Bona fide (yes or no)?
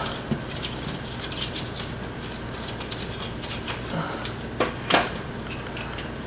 yes